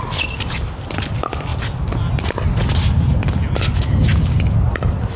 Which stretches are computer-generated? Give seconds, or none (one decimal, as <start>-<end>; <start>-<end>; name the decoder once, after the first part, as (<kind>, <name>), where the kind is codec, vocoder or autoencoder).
none